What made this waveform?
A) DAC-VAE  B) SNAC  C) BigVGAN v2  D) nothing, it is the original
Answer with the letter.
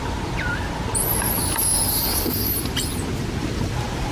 D